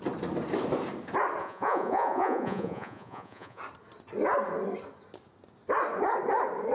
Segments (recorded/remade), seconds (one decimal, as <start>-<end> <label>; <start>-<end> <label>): 0.0-1.4 recorded; 1.4-3.6 remade; 3.6-6.7 recorded